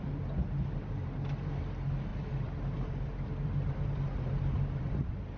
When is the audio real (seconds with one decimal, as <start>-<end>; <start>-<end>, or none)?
0.0-2.1